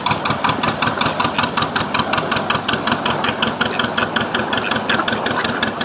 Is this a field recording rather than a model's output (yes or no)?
yes